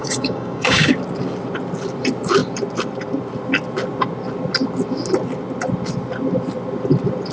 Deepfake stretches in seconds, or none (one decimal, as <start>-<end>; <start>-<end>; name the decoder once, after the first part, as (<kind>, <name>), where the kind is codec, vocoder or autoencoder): 0.0-0.9 (codec, DAC)